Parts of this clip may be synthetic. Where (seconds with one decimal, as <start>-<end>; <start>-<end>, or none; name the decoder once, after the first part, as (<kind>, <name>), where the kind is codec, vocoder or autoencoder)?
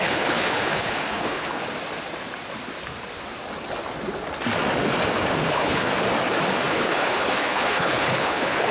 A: 0.0-1.6 (codec, HILCodec); 5.5-5.9; 6.7-8.7